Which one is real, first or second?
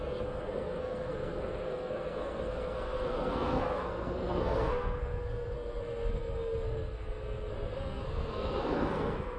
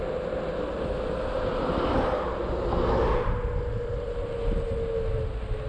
second